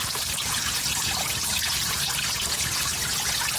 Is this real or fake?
fake